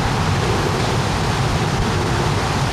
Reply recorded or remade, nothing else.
recorded